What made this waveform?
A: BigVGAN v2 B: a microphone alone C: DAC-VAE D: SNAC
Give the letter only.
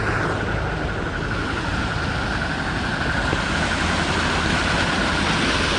B